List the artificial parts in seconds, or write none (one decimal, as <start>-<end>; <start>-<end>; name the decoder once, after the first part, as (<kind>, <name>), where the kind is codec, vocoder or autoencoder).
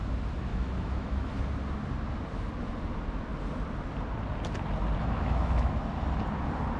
0.5-1.3 (autoencoder, DAC-VAE); 5.0-5.8